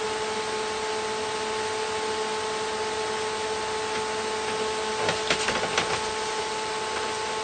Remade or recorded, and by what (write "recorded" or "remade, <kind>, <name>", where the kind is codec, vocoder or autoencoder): recorded